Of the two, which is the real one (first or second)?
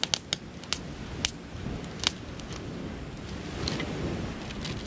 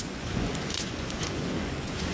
first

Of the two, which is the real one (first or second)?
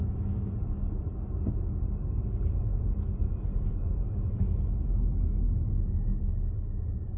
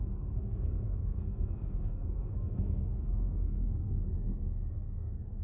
first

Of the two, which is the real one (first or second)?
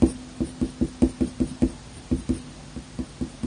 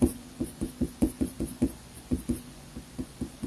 first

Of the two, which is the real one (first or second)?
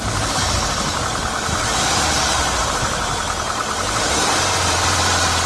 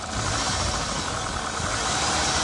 second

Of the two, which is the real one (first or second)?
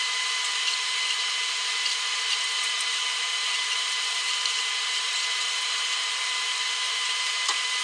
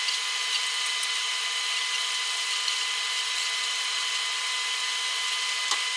second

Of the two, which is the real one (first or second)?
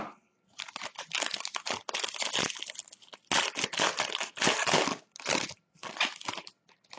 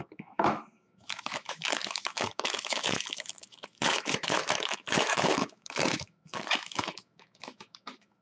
first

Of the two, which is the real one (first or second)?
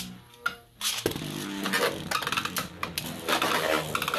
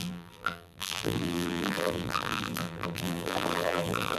first